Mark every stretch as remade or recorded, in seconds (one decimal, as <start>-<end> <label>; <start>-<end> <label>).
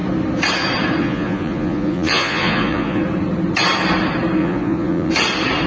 0.0-1.0 recorded; 1.0-3.0 remade; 3.0-4.4 recorded; 4.4-5.1 remade; 5.1-5.7 recorded